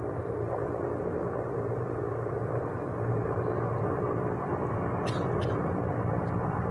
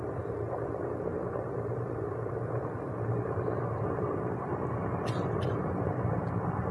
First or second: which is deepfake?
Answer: second